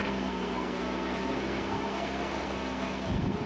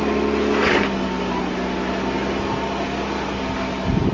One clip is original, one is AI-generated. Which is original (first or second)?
second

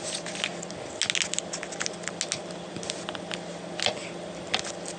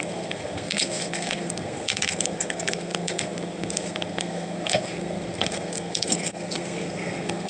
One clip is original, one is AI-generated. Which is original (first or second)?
first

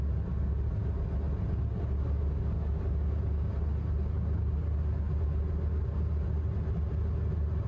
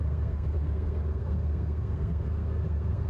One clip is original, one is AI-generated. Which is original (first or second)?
first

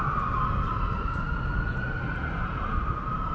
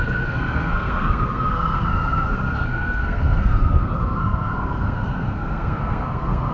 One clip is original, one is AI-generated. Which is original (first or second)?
first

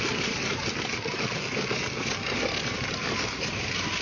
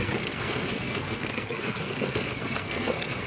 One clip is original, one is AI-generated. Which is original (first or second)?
first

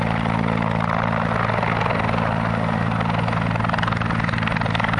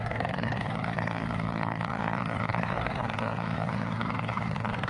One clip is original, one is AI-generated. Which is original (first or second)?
first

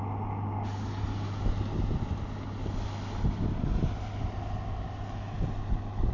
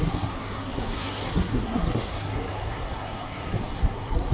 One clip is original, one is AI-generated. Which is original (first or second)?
first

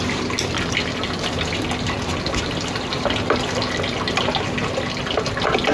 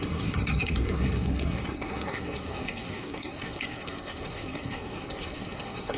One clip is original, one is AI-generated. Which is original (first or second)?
first